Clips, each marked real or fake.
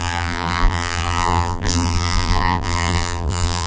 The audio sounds fake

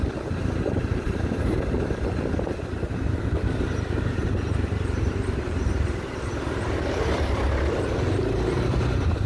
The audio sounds fake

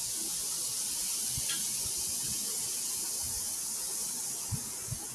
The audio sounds real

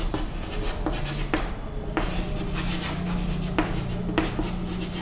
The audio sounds real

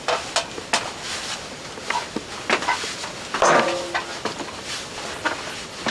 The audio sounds real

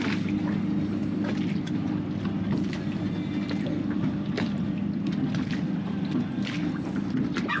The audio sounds real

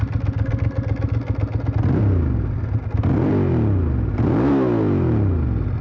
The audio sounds real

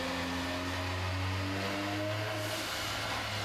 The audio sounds real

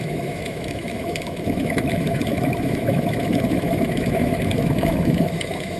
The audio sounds fake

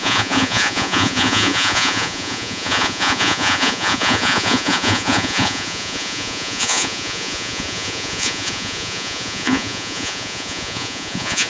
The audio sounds fake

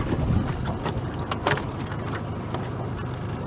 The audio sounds real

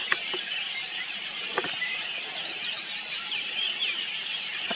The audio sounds fake